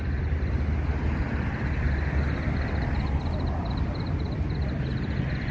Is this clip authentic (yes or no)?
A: yes